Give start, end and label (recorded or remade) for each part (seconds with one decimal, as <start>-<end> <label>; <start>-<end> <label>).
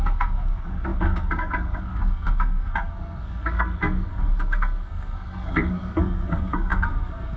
0.0-7.4 remade